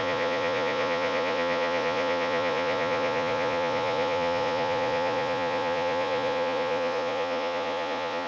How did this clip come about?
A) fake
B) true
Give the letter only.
A